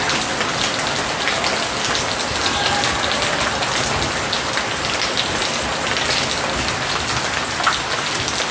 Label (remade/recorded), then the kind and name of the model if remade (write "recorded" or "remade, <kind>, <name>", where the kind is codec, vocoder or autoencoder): recorded